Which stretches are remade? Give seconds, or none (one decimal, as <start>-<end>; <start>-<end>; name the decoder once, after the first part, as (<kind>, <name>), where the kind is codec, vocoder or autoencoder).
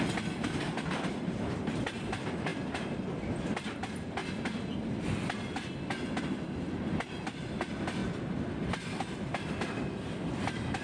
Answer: 0.0-4.2 (vocoder, BigVGAN v2); 6.2-8.0; 8.7-10.8